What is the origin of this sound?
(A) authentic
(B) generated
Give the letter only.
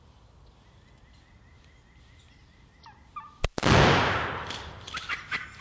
A